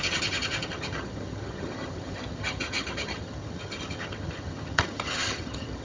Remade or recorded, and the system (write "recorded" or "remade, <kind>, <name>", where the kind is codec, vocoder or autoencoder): remade, vocoder, HiFi-GAN